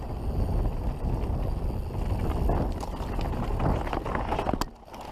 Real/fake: real